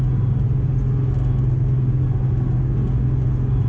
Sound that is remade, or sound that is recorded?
recorded